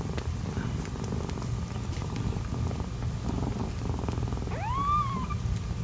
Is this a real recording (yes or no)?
yes